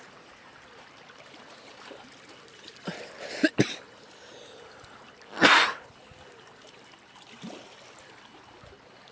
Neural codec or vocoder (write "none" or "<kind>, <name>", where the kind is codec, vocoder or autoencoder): none